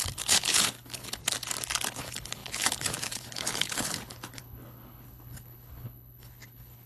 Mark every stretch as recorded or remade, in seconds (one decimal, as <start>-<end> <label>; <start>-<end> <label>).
0.0-1.2 remade; 1.2-1.9 recorded; 1.9-6.9 remade